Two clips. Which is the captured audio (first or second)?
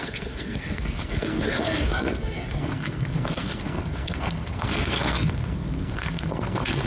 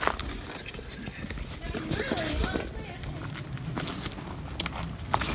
second